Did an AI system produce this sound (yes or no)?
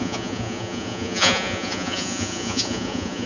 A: yes